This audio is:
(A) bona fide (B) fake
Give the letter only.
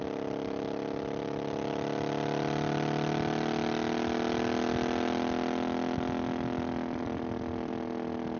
A